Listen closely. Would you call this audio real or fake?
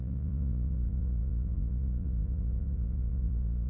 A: fake